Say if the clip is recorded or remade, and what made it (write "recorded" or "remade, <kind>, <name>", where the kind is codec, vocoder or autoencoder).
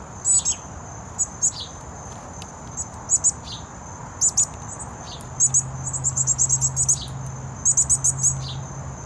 recorded